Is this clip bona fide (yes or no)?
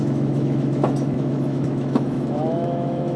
no